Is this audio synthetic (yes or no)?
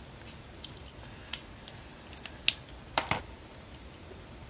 no